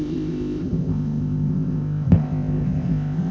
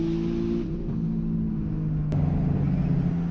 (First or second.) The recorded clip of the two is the second